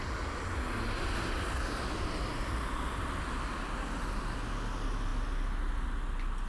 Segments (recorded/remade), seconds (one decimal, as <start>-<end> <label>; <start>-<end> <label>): 0.0-6.5 recorded